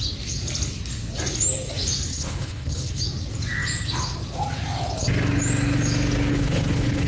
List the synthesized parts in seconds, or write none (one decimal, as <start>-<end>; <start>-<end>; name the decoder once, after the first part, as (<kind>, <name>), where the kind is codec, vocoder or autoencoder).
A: 2.1-3.0 (codec, HILCodec); 6.3-7.1